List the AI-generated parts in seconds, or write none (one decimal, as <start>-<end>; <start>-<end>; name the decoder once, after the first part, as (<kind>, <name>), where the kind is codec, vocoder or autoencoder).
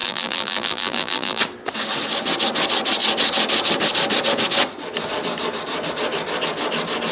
0.0-1.4 (vocoder, BigVGAN v2)